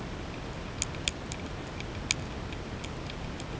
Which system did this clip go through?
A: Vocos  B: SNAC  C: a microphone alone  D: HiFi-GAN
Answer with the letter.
C